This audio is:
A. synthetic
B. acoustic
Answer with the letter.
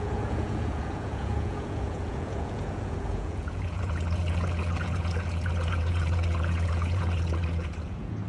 A